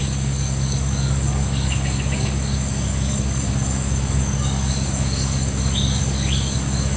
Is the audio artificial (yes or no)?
yes